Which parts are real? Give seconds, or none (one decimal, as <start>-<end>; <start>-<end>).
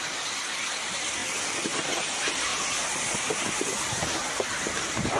0.0-5.2